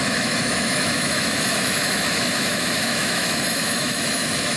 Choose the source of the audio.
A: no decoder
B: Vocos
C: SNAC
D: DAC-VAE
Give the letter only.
D